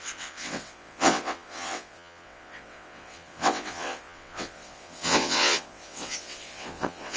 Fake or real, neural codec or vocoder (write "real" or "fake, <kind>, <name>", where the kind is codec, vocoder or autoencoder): fake, vocoder, WaveNeXt